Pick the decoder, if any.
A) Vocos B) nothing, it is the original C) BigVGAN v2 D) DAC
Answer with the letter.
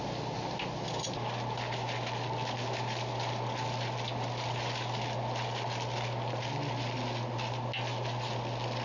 B